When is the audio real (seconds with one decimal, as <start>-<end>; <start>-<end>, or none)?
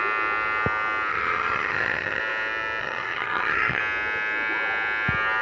0.0-1.1; 2.2-2.8; 3.8-5.4